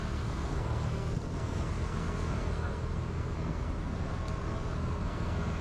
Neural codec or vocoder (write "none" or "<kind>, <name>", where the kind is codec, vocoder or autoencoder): codec, SNAC